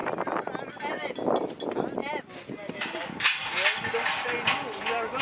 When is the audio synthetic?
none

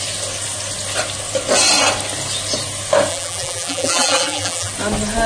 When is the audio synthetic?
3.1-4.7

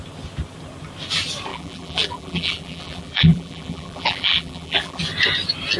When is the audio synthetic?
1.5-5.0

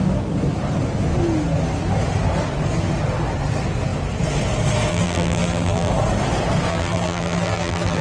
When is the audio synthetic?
4.9-5.9; 6.7-8.0

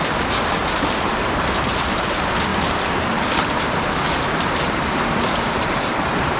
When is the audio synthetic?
0.6-1.7; 2.5-6.4

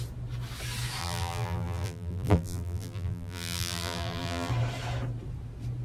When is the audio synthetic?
1.0-4.5